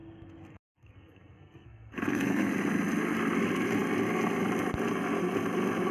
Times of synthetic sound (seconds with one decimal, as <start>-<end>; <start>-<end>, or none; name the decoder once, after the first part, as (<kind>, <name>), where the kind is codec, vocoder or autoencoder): 0.0-2.5 (codec, SNAC)